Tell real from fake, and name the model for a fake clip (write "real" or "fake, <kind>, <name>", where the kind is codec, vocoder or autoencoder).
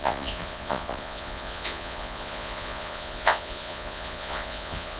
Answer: fake, vocoder, Vocos